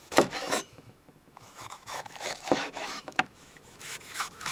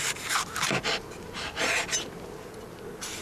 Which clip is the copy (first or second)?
first